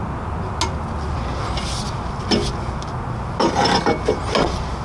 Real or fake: real